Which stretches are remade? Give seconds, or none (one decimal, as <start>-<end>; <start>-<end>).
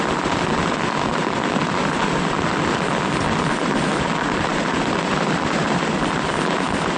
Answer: 4.5-6.0